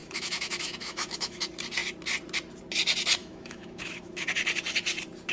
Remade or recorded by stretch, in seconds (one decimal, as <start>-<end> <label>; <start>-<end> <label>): 0.0-1.4 remade; 1.4-3.2 recorded; 3.2-4.3 remade; 4.3-5.3 recorded